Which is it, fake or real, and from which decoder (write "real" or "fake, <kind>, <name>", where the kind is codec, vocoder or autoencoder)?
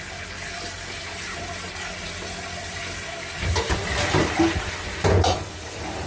real